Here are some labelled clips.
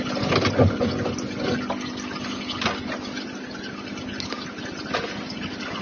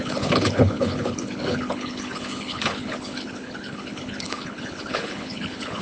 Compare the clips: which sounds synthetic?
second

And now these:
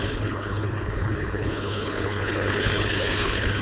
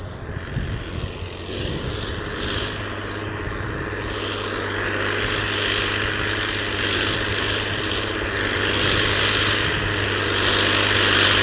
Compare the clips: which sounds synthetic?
first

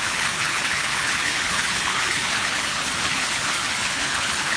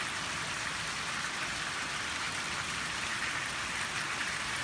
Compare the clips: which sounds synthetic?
first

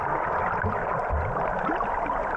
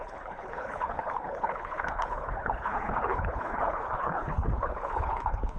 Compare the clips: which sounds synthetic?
second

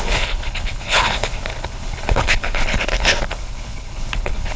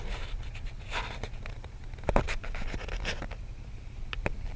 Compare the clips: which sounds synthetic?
first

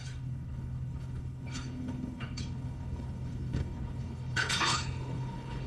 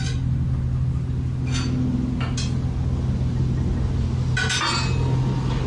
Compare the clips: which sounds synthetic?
first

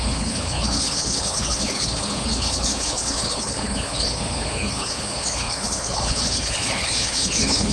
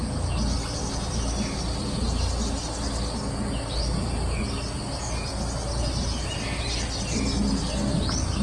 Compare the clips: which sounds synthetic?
first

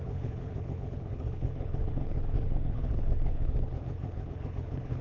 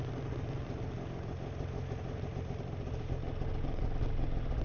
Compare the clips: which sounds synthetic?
first